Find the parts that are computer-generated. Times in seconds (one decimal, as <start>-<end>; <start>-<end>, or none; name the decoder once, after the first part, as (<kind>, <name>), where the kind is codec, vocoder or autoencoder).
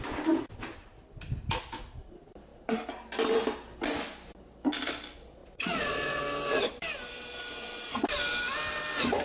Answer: 5.4-6.2 (vocoder, Vocos)